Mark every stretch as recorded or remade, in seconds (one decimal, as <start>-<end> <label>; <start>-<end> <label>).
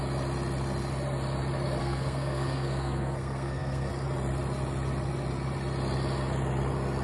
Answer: 0.0-1.8 recorded; 1.8-3.9 remade; 3.9-7.0 recorded